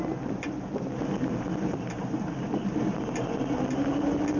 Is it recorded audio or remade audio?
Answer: recorded